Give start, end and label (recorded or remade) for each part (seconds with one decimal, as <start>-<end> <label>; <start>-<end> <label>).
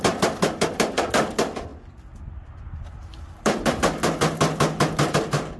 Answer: 0.0-5.6 recorded